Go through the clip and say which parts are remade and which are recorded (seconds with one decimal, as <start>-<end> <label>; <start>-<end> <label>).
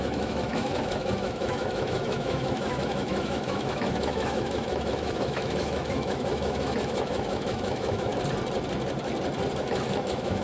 0.0-8.1 remade; 8.1-9.6 recorded; 9.6-10.4 remade